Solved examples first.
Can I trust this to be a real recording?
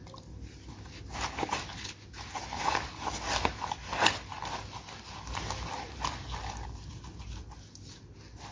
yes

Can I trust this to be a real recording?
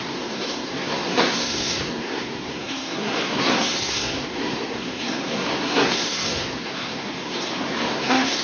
no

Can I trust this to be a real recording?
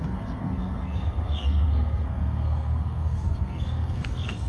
no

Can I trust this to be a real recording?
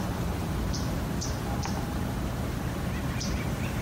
no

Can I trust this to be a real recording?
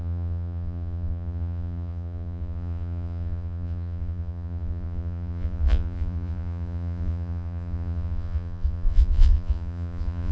no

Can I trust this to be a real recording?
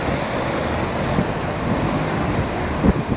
yes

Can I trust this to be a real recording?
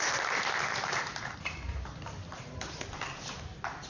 no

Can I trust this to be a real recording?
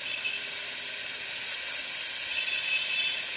yes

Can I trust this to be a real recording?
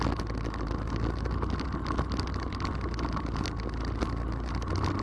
yes